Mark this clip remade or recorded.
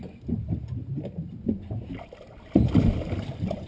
recorded